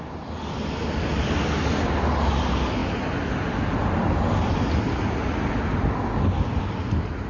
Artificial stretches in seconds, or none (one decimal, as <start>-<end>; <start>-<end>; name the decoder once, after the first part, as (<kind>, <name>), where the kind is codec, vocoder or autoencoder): none